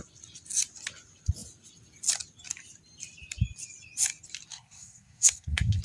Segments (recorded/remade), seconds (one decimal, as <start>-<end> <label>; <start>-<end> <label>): 0.0-4.5 recorded; 4.5-5.8 remade